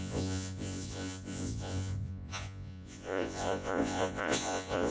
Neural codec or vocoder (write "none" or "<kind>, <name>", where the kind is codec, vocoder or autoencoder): vocoder, Vocos